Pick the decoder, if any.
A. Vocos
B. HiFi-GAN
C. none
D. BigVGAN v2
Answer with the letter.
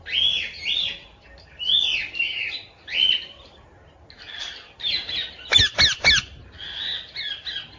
C